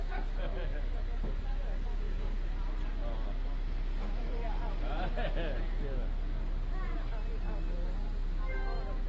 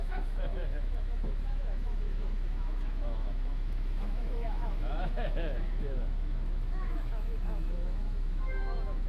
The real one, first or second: first